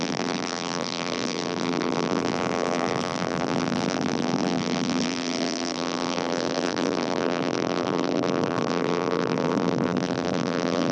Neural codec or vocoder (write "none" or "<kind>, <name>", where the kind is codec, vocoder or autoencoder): vocoder, BigVGAN v2